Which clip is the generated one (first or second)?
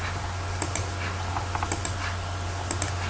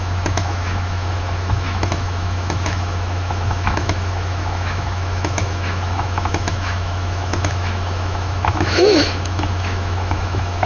second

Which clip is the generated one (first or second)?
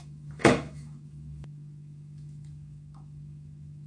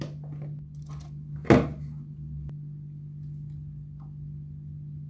first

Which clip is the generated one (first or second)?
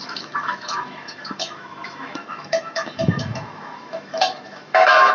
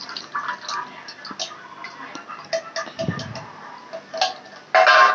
first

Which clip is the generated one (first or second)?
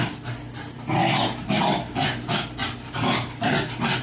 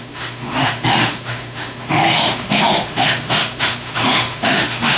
second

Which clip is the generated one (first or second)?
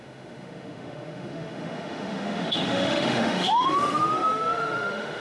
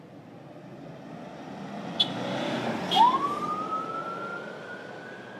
first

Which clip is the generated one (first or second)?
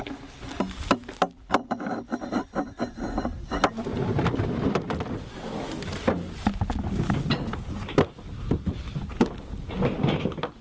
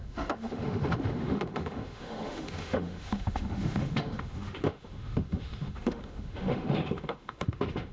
second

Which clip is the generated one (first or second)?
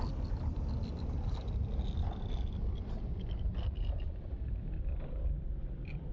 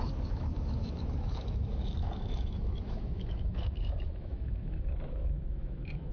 second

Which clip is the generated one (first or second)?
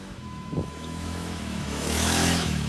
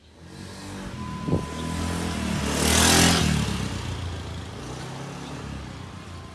first